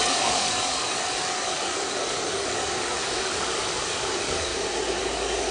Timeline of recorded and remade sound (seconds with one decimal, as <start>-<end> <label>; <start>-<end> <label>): 0.0-4.5 remade; 4.5-5.0 recorded; 5.0-5.5 remade